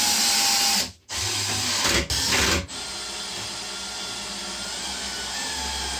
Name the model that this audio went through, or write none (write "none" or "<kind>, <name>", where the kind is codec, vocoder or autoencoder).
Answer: none